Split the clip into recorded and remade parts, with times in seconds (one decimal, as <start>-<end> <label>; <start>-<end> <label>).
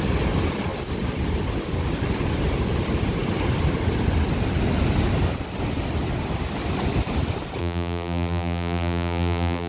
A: 0.0-7.6 recorded; 7.6-9.7 remade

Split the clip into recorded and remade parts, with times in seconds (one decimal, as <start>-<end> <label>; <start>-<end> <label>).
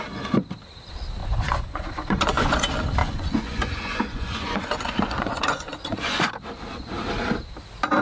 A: 0.0-1.2 recorded; 1.2-2.6 remade; 2.6-3.0 recorded; 3.0-6.3 remade; 6.3-8.0 recorded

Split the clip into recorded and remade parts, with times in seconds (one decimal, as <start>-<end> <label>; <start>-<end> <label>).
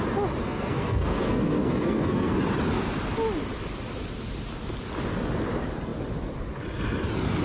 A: 0.0-0.4 recorded; 0.4-2.4 remade; 2.4-7.4 recorded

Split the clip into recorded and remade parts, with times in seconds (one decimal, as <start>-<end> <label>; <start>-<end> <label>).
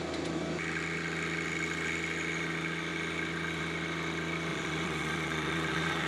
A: 0.0-4.5 recorded; 4.5-6.1 remade